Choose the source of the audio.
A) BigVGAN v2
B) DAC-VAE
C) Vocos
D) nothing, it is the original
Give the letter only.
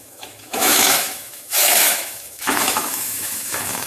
B